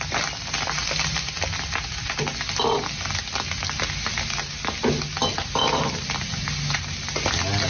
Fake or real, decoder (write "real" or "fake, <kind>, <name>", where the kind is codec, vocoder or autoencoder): real